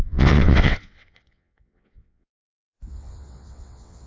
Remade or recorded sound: remade